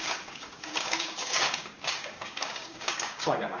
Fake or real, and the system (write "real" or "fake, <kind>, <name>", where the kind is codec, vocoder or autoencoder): fake, codec, DAC